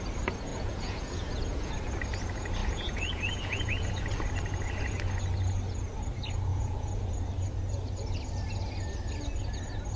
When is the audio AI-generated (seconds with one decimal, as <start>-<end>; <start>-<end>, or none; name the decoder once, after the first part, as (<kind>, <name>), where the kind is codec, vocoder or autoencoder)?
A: 0.5-1.7 (vocoder, Vocos); 2.6-3.9; 6.5-7.1